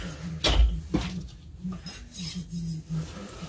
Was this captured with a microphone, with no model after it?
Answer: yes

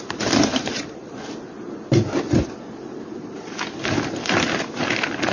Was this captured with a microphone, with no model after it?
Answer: no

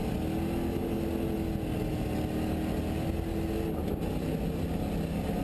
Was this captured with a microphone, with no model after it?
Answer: yes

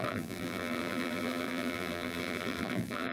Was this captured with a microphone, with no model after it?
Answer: no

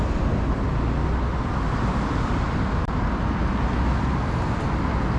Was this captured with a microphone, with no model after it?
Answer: yes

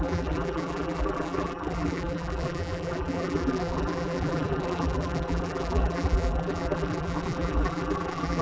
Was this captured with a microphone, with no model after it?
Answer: no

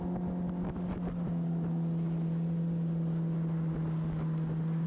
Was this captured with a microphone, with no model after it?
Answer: yes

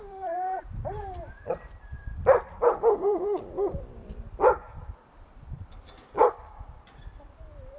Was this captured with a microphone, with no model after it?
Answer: no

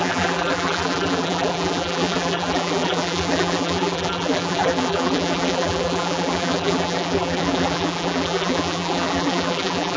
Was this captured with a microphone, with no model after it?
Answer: no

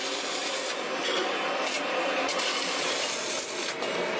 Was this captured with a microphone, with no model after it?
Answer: no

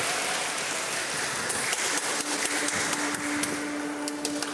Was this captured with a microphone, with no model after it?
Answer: yes